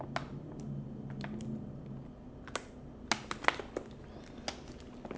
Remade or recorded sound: recorded